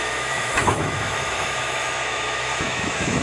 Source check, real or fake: fake